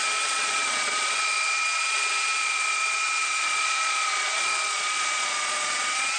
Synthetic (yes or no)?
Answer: yes